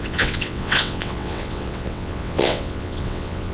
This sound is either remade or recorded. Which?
remade